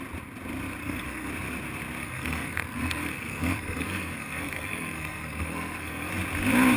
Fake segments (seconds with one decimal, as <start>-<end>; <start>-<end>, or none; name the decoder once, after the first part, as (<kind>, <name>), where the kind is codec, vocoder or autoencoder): 0.8-1.3 (codec, SNAC); 2.0-6.1